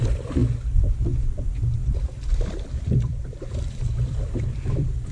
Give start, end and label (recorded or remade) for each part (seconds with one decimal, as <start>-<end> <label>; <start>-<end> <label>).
0.0-0.4 remade; 0.4-1.3 recorded; 1.3-5.1 remade